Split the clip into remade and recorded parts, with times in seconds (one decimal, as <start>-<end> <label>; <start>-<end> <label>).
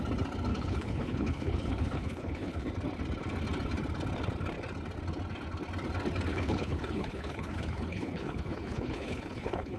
0.0-0.5 recorded; 0.5-2.7 remade; 2.7-6.3 recorded; 6.3-9.8 remade